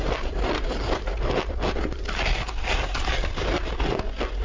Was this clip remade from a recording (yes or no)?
no